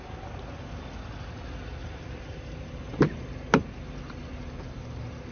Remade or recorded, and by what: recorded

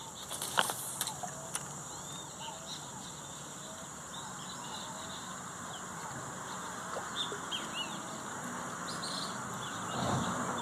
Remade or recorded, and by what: recorded